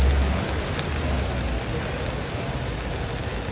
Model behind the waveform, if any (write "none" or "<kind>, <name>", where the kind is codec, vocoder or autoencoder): none